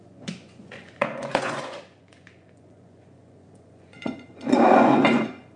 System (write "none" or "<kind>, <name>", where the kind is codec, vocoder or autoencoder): vocoder, Vocos